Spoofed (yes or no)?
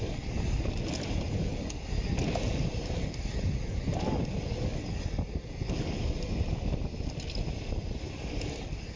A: no